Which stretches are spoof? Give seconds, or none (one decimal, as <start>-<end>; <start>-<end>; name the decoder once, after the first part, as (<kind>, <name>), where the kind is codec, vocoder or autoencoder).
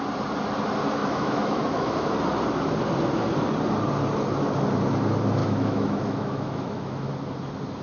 1.0-2.1 (autoencoder, DAC-VAE); 5.4-7.1